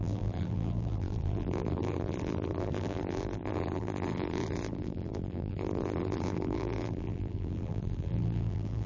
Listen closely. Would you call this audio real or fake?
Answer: fake